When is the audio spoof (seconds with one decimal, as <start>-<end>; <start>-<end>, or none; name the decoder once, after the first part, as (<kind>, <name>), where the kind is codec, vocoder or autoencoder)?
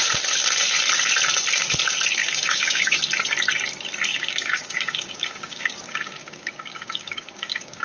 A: 2.2-3.0 (codec, DAC); 4.1-7.8